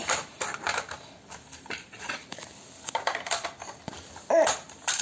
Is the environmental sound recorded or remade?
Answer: remade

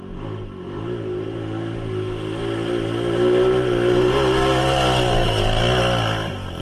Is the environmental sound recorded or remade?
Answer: recorded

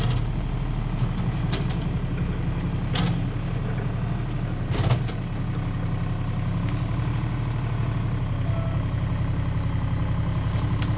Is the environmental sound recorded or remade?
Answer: recorded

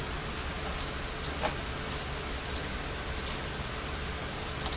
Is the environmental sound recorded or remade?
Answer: recorded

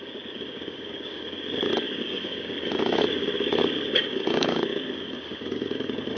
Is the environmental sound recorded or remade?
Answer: remade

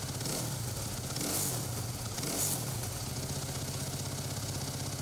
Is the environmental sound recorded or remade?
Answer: recorded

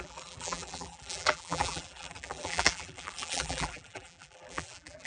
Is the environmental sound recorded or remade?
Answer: remade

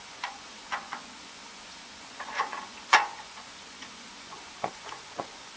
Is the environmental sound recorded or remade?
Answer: remade